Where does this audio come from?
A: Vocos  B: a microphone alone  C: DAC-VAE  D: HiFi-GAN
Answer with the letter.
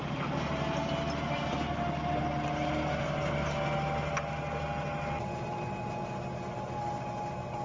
B